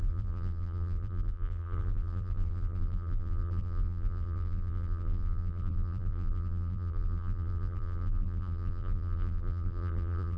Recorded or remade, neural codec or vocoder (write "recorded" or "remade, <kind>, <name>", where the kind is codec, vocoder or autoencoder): remade, vocoder, BigVGAN v2